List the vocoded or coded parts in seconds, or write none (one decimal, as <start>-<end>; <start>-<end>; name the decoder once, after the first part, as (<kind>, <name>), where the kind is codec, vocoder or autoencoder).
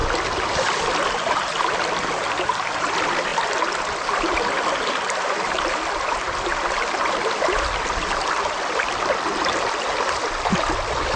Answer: none